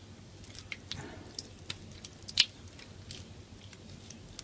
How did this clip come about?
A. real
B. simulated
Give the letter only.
A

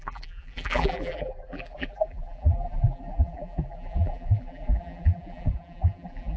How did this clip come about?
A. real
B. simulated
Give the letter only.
B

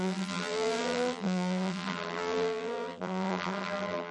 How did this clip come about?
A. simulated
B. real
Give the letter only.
A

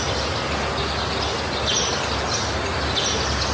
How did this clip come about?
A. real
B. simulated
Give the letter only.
A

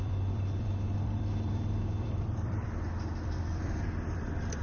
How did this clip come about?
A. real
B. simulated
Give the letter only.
B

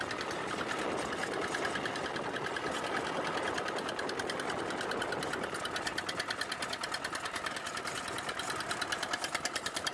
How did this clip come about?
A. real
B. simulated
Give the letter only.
A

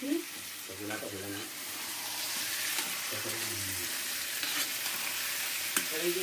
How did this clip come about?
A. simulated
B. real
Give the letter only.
A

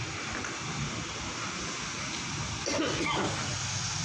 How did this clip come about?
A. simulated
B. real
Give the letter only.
B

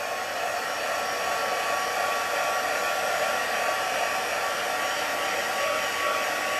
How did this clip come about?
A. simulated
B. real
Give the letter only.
B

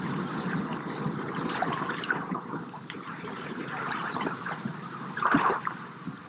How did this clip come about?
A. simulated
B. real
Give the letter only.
A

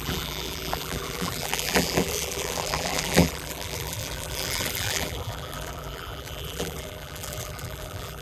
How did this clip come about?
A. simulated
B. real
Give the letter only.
A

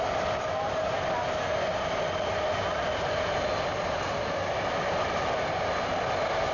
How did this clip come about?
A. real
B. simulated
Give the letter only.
A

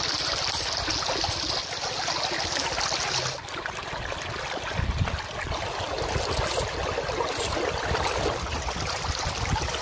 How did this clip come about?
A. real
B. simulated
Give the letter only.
A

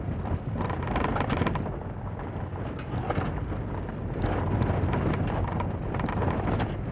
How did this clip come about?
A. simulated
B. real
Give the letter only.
B